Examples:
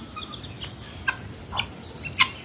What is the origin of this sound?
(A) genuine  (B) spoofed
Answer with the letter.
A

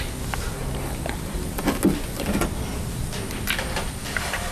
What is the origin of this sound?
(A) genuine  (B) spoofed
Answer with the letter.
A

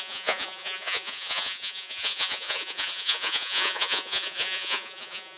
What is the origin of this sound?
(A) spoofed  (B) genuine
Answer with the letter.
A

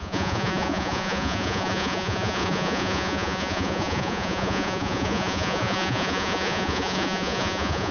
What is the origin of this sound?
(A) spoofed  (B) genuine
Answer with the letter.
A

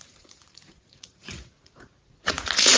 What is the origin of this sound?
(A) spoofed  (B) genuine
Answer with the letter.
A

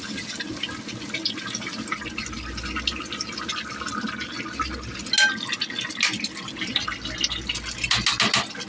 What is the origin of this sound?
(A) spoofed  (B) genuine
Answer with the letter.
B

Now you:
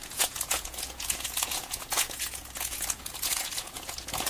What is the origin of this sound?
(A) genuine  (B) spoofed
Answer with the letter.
B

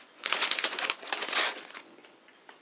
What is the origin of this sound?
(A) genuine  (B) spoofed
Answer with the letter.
B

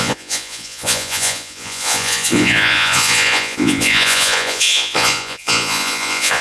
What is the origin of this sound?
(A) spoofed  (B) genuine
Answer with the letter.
A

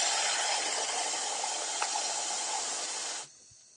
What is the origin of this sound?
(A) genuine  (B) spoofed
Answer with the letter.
A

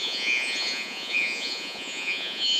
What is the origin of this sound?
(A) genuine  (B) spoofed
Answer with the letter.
B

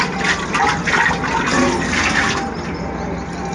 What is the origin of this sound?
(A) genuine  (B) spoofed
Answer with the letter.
A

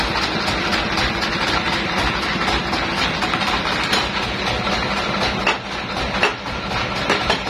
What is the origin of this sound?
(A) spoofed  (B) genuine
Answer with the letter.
B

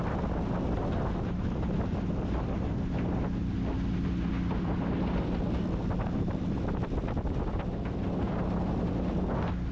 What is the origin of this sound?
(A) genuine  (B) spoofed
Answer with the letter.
A